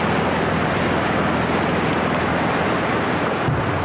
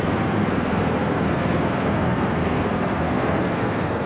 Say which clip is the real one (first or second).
first